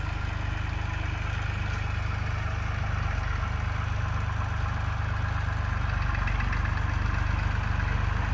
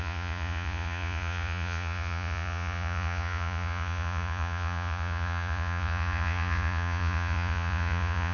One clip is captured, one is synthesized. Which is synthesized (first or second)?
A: second